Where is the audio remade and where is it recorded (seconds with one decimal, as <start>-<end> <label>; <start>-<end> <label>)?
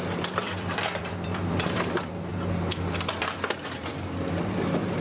0.0-2.3 remade; 2.3-3.1 recorded; 3.1-5.0 remade